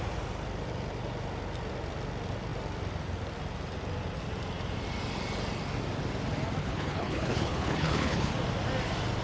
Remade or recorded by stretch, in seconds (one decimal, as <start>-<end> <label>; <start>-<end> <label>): 0.0-6.6 recorded; 6.6-8.3 remade; 8.3-9.2 recorded